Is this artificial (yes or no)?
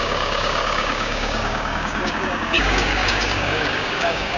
yes